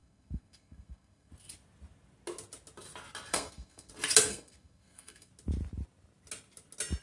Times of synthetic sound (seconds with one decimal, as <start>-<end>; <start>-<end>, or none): 0.0-1.3; 3.3-3.9; 4.3-5.3